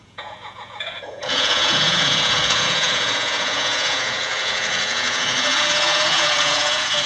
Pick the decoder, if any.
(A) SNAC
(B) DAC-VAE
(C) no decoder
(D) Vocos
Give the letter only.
D